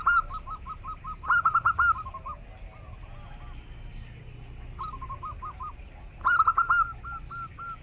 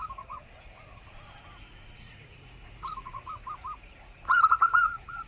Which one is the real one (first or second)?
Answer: first